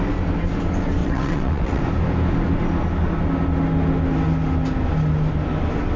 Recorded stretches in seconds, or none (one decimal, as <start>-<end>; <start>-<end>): 0.0-1.0; 1.8-6.0

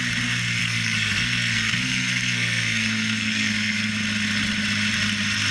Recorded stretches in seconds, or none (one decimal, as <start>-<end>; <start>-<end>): 0.0-0.6; 3.9-5.5

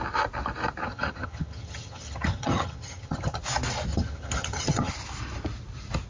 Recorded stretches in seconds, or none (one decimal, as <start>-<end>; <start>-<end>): 0.0-0.8; 3.4-3.9; 4.9-6.1

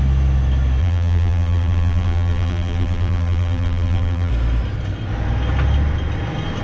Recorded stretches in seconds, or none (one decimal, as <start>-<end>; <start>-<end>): 0.0-0.8; 4.3-6.6

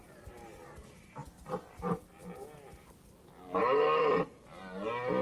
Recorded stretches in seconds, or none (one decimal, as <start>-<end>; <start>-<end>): 0.0-5.2

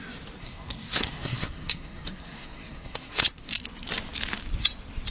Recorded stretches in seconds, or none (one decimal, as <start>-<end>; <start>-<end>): 0.0-0.4; 3.5-5.1

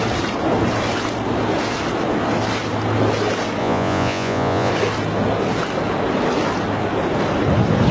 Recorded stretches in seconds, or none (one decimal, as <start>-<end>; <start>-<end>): 0.0-3.6; 4.7-7.9